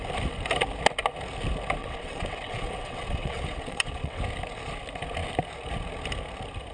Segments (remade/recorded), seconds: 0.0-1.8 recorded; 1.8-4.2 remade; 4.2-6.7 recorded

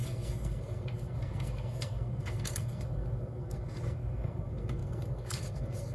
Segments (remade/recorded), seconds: 0.0-5.9 remade

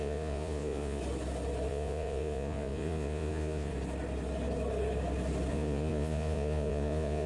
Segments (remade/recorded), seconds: 0.0-1.0 remade; 1.0-1.7 recorded; 1.7-3.7 remade; 3.7-5.5 recorded; 5.5-7.3 remade

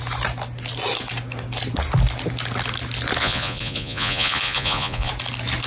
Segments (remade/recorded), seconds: 0.0-3.2 recorded; 3.2-5.1 remade; 5.1-5.7 recorded

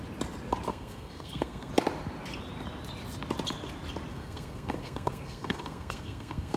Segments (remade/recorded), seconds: 0.0-0.7 recorded; 0.7-1.7 remade; 1.7-4.1 recorded; 4.1-6.6 remade